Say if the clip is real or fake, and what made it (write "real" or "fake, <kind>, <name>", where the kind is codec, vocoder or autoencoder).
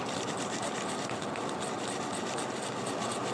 real